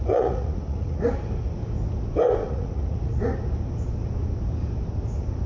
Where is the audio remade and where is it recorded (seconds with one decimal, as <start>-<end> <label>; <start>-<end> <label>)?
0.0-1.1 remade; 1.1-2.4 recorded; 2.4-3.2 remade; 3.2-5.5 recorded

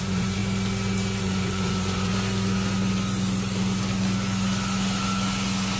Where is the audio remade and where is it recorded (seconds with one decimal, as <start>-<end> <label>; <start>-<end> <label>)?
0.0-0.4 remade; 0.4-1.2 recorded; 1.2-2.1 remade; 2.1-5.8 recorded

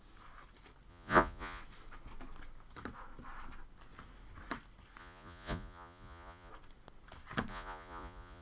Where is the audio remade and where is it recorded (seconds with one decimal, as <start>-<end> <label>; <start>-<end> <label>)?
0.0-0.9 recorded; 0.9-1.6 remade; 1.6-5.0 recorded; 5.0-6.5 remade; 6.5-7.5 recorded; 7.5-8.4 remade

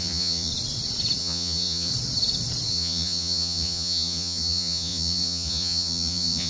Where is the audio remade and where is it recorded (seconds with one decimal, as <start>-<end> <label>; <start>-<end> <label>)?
0.0-0.5 remade; 0.5-1.2 recorded; 1.2-1.9 remade; 1.9-2.7 recorded; 2.7-6.5 remade

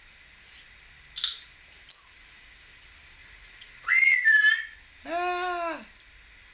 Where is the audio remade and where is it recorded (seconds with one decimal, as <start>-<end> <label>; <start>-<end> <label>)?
0.0-3.2 recorded; 3.2-3.9 remade; 3.9-6.5 recorded